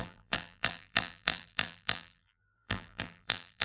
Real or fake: fake